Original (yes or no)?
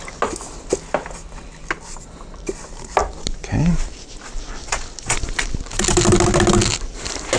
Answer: yes